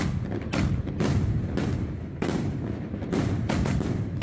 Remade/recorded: recorded